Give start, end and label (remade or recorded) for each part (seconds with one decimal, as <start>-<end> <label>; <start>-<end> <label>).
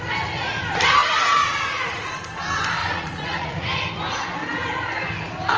0.0-1.0 recorded; 1.0-2.2 remade; 2.2-2.8 recorded; 2.8-3.9 remade; 3.9-5.6 recorded